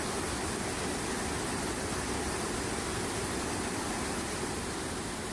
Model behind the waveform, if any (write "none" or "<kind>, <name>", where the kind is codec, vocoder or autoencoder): none